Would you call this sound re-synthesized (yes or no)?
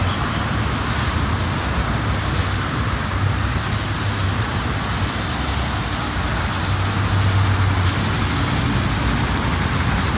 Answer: no